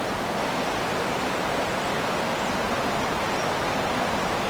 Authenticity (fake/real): real